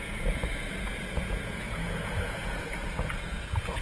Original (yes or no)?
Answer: no